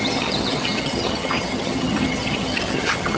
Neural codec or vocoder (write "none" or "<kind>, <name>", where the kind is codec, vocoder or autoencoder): vocoder, HiFi-GAN